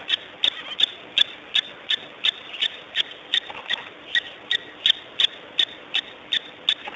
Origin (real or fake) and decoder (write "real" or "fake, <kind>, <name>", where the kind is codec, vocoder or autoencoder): real